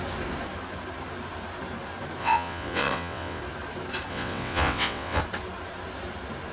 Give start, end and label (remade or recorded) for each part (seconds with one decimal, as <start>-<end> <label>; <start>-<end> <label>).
0.0-2.2 recorded; 2.2-3.4 remade; 3.4-4.1 recorded; 4.1-5.2 remade; 5.2-6.5 recorded